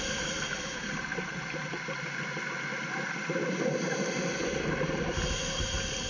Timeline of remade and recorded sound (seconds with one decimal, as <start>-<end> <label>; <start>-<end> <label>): 0.0-6.1 recorded